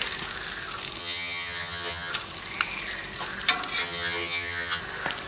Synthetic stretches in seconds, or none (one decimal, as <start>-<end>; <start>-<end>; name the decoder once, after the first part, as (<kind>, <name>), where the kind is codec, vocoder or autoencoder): 1.0-2.1 (vocoder, HiFi-GAN); 3.8-4.8